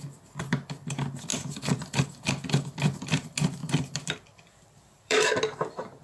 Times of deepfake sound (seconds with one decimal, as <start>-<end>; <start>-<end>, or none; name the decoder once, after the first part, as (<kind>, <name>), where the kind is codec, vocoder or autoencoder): 1.3-2.4 (vocoder, BigVGAN v2); 3.6-5.3